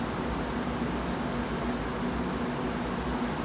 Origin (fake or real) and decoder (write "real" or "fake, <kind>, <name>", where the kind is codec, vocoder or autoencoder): real